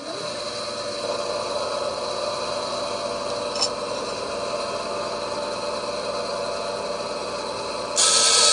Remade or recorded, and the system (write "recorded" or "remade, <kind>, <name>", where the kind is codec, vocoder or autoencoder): recorded